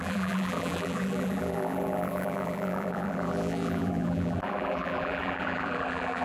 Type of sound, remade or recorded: remade